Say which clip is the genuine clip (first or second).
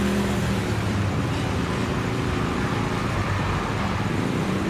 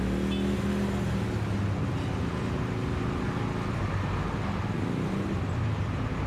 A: second